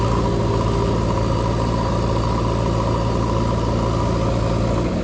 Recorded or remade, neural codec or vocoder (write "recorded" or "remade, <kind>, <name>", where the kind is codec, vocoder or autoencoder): recorded